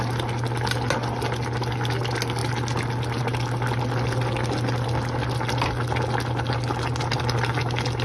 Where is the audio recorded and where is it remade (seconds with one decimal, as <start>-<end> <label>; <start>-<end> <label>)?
0.0-8.0 recorded

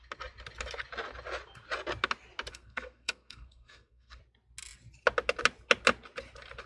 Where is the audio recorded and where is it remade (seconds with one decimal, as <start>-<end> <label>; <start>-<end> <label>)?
0.0-2.5 recorded; 2.5-4.2 remade; 4.2-6.7 recorded